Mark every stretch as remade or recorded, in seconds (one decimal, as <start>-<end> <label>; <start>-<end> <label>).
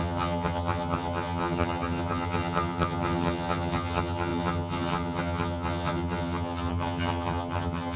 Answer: 0.0-8.0 remade